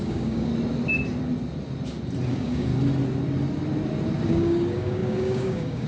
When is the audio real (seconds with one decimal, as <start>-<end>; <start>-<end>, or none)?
0.5-2.3; 2.7-4.3

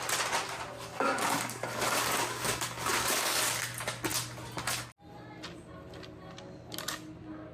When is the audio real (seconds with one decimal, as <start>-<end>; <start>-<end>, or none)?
0.0-0.9; 3.4-7.5

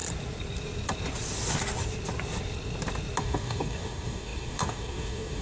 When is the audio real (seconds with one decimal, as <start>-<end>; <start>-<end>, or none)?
0.0-3.2

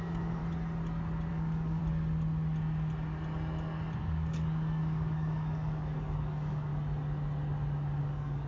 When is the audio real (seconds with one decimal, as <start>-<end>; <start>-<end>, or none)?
0.4-1.3; 1.8-4.0; 6.7-8.0

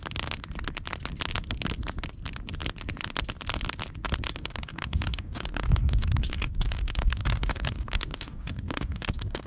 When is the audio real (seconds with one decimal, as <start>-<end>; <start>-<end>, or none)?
0.0-4.4